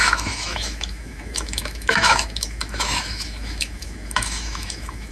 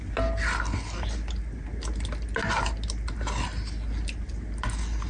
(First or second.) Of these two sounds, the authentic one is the second